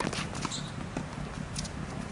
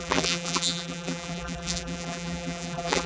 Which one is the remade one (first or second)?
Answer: second